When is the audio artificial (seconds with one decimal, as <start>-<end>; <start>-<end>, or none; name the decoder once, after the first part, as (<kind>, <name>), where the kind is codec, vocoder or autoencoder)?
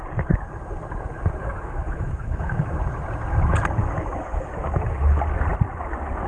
1.4-2.8 (autoencoder, DAC-VAE); 3.8-5.2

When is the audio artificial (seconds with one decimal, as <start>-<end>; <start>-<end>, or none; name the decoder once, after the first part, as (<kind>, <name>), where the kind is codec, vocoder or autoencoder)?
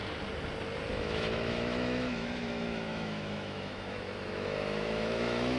0.9-5.6 (autoencoder, DAC-VAE)